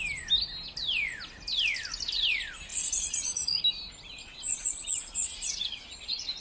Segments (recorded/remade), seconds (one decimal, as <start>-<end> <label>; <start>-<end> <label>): 0.0-2.7 recorded; 2.7-3.6 remade; 3.6-4.2 recorded; 4.2-6.4 remade